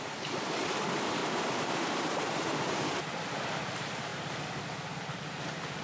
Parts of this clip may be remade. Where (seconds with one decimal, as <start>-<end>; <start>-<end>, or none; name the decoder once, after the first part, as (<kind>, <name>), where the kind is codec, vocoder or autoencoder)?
0.0-1.2 (vocoder, BigVGAN v2); 2.7-5.8